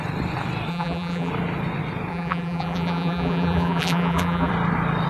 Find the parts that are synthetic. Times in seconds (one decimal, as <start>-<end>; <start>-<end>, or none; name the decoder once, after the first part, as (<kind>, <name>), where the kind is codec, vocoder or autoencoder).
0.7-1.3 (vocoder, BigVGAN v2); 2.1-4.5